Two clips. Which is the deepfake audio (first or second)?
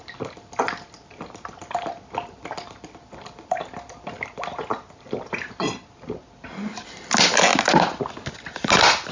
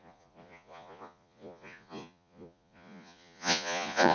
second